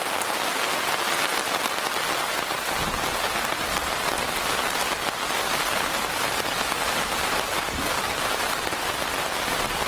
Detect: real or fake real